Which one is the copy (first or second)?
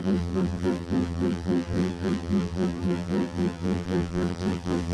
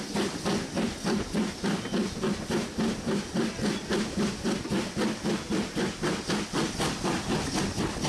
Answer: first